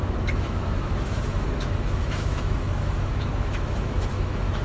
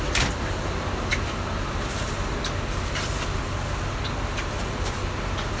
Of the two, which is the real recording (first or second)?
second